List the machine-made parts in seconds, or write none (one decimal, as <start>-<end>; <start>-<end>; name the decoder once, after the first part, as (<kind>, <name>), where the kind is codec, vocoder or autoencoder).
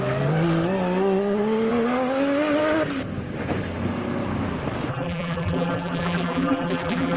4.9-7.2 (vocoder, BigVGAN v2)